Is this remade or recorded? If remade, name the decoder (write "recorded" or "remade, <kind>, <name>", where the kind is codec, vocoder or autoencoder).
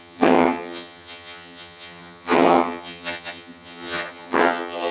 remade, vocoder, HiFi-GAN